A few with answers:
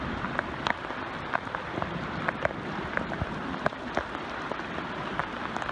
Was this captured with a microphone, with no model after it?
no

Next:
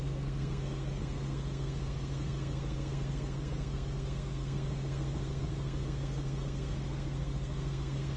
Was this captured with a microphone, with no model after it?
no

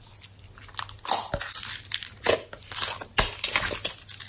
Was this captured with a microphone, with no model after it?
yes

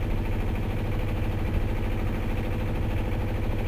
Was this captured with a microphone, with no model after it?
yes